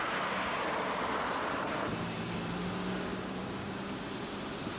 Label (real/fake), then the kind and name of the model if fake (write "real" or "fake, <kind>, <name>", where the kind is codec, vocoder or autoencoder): real